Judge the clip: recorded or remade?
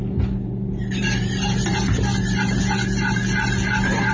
recorded